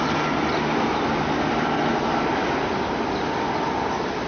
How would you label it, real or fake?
real